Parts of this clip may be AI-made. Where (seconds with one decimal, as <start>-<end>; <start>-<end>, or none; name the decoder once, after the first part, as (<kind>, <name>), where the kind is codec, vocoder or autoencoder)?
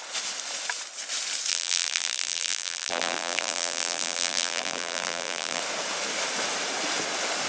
1.5-5.6 (vocoder, BigVGAN v2)